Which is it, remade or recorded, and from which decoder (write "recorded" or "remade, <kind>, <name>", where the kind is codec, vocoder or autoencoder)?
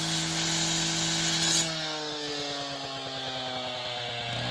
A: recorded